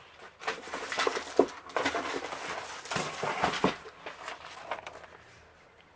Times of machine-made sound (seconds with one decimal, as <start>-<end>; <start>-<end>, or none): none